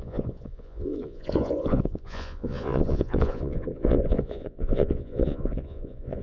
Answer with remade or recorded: remade